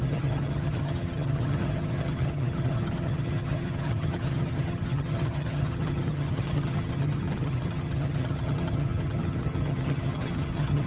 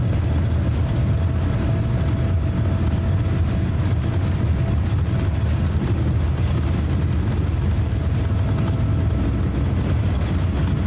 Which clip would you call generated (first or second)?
first